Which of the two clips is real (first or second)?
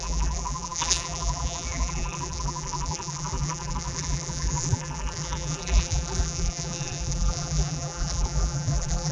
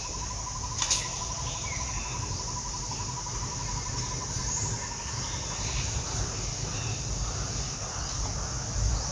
second